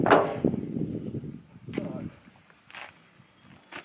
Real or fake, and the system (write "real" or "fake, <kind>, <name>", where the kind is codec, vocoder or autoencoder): real